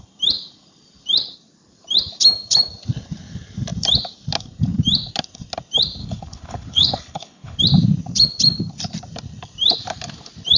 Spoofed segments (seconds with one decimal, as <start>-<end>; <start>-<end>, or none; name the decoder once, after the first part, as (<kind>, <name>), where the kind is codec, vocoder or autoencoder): 6.0-7.6 (codec, HILCodec)